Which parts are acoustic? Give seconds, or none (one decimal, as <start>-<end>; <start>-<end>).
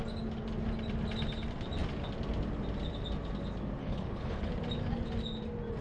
0.0-3.8; 4.5-5.8